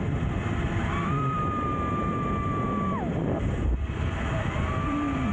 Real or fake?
fake